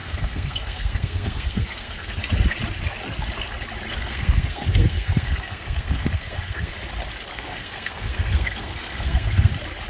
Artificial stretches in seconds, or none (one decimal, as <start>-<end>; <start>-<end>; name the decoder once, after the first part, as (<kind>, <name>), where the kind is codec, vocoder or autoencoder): 0.0-2.2 (codec, SNAC); 4.0-6.7; 7.3-9.5